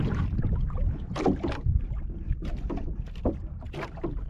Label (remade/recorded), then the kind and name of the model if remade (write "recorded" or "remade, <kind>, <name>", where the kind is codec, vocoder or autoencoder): recorded